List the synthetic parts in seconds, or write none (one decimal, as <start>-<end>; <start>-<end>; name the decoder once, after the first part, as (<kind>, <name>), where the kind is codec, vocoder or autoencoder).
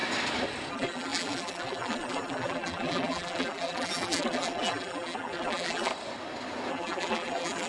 0.7-5.9 (vocoder, BigVGAN v2); 6.7-7.7